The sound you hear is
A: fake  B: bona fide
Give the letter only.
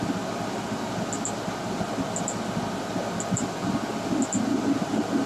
B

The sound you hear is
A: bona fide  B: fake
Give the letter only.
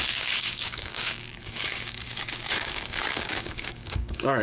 B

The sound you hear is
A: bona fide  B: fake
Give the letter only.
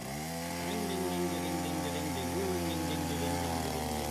A